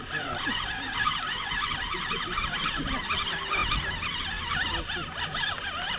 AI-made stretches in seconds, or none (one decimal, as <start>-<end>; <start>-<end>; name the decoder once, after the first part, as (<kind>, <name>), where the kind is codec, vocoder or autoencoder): none